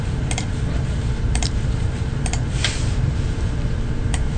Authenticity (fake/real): fake